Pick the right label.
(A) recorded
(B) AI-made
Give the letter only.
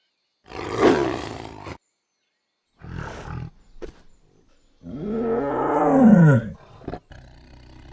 A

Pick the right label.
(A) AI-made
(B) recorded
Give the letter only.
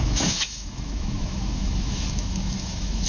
A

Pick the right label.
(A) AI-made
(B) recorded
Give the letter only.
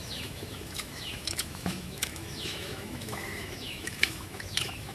A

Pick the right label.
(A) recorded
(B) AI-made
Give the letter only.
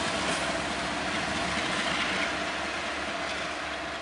A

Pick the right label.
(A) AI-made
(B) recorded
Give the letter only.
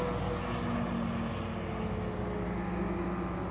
B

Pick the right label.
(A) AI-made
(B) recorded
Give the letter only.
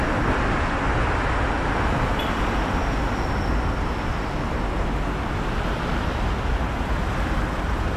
B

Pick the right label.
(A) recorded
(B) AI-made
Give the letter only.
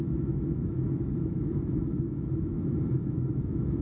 B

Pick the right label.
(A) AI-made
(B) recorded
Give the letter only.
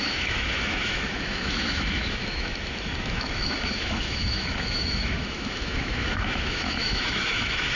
A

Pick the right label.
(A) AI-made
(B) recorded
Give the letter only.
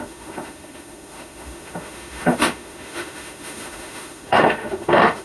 A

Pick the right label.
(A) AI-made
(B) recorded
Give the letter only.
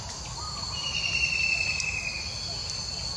B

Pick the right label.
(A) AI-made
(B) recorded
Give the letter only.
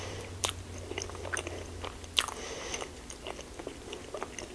B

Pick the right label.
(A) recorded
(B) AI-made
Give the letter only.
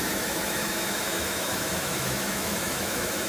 B